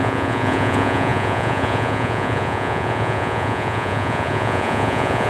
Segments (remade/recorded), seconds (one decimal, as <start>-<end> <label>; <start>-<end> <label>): 0.0-5.3 remade